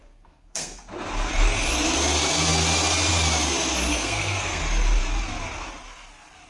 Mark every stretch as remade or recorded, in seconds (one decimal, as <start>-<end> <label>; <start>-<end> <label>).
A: 0.0-0.8 remade; 0.8-3.9 recorded; 3.9-4.6 remade; 4.6-6.5 recorded